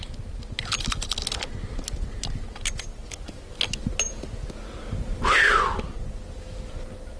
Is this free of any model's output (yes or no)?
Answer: yes